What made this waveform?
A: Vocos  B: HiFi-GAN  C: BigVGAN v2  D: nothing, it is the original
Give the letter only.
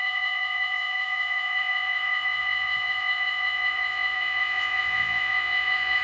A